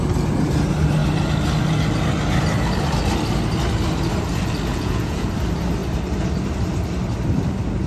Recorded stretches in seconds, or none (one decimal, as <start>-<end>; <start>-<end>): 0.0-4.7; 5.3-7.9